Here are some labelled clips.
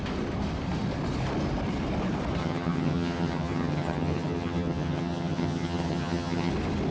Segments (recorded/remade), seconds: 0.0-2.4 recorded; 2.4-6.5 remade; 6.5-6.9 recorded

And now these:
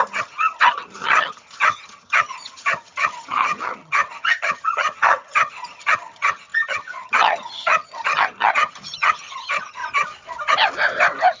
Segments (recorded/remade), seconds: 0.0-9.8 remade; 9.8-11.4 recorded

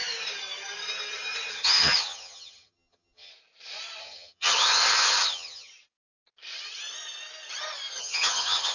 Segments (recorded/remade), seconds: 0.0-1.5 recorded; 1.5-3.3 remade; 3.3-4.0 recorded; 4.0-5.7 remade; 5.7-8.0 recorded; 8.0-8.7 remade

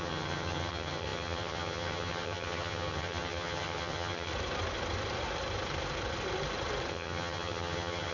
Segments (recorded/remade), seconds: 0.0-4.3 remade; 4.3-6.9 recorded; 6.9-8.1 remade

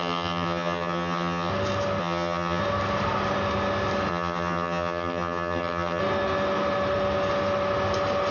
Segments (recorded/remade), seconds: 0.0-1.5 remade; 1.5-2.0 recorded; 2.0-2.6 remade; 2.6-4.1 recorded; 4.1-6.0 remade; 6.0-8.3 recorded

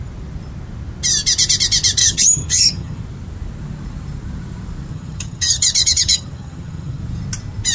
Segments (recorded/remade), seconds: 0.0-2.0 recorded; 2.0-3.0 remade; 3.0-4.9 recorded; 4.9-7.0 remade; 7.0-7.7 recorded

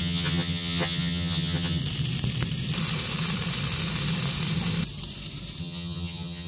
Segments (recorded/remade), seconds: 0.0-1.8 remade; 1.8-5.6 recorded; 5.6-6.5 remade